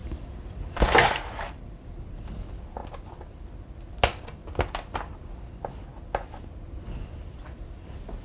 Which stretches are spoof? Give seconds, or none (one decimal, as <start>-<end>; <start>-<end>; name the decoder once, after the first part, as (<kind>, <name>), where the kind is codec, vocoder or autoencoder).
0.0-0.8 (vocoder, BigVGAN v2)